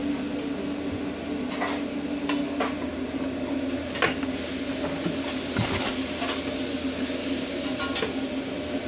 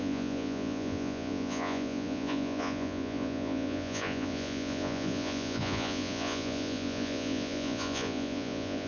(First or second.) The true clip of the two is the first